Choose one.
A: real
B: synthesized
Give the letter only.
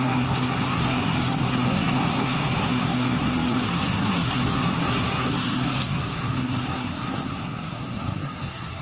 B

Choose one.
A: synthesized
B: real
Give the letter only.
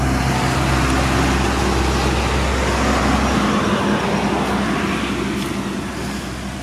B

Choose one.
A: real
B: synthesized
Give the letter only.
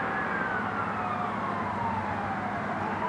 A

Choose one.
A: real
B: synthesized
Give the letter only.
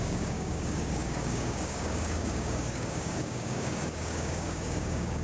B